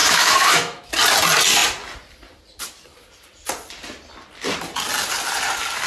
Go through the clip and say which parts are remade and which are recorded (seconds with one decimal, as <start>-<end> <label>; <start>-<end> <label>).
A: 0.0-0.9 remade; 0.9-5.9 recorded